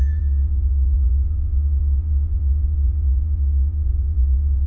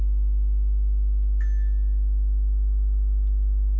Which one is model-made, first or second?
first